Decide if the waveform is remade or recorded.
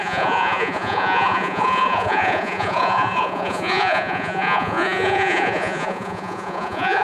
remade